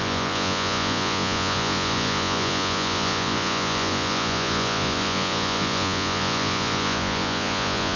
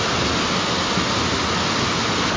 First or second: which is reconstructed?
first